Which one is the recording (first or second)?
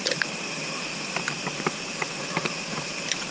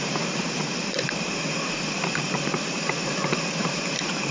first